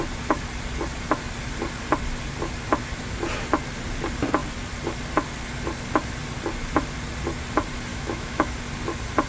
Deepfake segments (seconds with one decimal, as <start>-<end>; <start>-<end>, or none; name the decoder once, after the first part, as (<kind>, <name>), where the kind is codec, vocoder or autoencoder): 7.9-8.5 (autoencoder, DAC-VAE)